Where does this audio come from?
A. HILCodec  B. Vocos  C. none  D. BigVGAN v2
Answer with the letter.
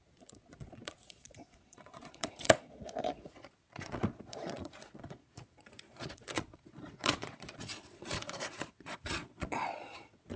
B